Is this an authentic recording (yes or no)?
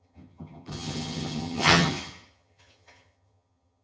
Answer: no